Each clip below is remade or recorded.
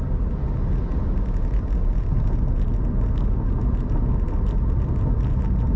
recorded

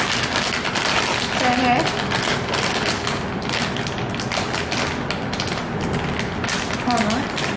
recorded